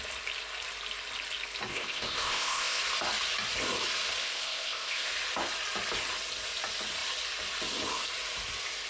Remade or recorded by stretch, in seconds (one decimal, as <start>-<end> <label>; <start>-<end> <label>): 0.0-1.7 recorded; 1.7-2.8 remade; 2.8-4.2 recorded; 4.2-5.1 remade; 5.1-8.9 recorded

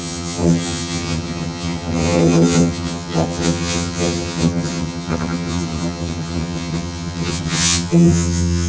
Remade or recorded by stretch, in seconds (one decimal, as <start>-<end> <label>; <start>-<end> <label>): 0.0-8.7 remade